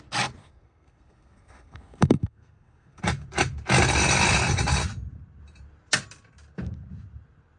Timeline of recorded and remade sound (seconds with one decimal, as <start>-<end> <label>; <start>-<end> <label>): 0.0-0.4 recorded; 0.4-3.0 remade; 3.0-7.6 recorded